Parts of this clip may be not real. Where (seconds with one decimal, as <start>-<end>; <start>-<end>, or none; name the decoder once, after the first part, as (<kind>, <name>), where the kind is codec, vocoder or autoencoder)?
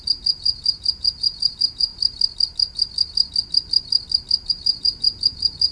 0.0-1.9 (vocoder, Vocos); 4.5-5.7